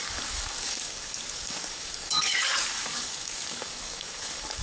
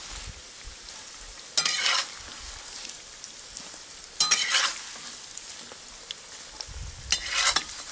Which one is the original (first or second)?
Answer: second